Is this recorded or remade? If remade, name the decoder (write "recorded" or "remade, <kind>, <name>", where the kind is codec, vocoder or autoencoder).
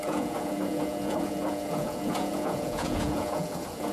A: remade, vocoder, Vocos